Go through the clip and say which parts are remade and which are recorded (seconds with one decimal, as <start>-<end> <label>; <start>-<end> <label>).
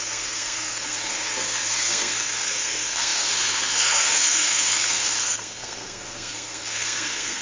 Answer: 0.0-7.4 remade